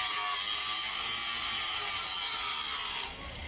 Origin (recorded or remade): recorded